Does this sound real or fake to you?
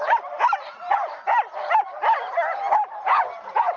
real